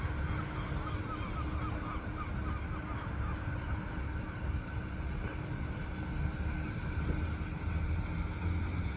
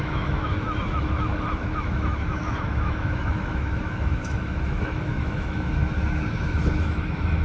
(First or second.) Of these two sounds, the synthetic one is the second